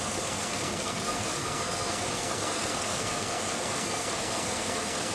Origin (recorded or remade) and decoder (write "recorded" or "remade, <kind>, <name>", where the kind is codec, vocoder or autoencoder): remade, codec, SNAC